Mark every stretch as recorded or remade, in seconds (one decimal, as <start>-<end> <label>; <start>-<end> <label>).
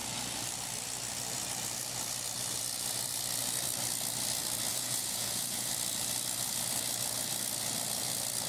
0.0-4.7 recorded; 4.7-5.7 remade; 5.7-8.5 recorded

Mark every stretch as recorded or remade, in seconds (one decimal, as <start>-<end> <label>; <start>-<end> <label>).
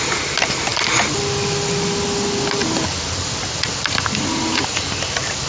0.0-5.5 recorded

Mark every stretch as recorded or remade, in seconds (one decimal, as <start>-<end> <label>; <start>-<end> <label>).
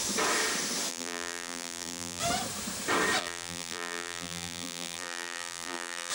0.0-0.9 recorded; 0.9-2.2 remade; 2.2-3.2 recorded; 3.2-6.1 remade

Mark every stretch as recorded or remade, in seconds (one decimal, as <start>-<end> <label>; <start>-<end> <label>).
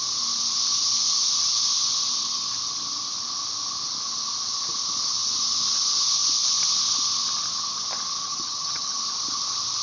0.0-8.2 recorded; 8.2-9.0 remade; 9.0-9.8 recorded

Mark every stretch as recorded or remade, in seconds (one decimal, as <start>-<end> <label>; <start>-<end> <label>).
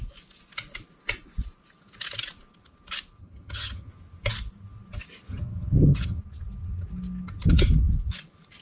0.0-3.2 recorded; 3.2-3.9 remade; 3.9-5.3 recorded; 5.3-6.2 remade; 6.2-8.6 recorded